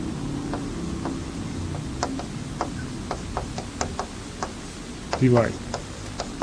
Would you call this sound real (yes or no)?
yes